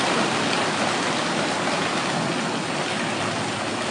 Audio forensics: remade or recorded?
recorded